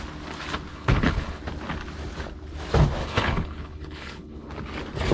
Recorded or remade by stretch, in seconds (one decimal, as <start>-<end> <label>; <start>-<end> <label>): 0.0-0.7 recorded; 0.7-1.4 remade; 1.4-3.0 recorded; 3.0-4.5 remade; 4.5-5.1 recorded